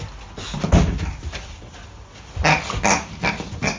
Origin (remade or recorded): recorded